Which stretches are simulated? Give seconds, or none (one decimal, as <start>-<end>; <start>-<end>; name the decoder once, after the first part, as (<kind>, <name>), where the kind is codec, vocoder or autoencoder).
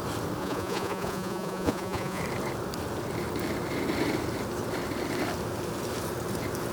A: 0.4-2.2 (vocoder, Vocos)